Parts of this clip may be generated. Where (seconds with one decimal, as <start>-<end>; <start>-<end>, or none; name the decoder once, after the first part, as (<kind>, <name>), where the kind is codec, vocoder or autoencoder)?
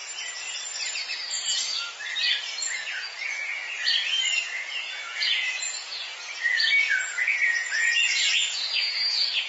2.7-3.6 (vocoder, Vocos); 4.7-9.5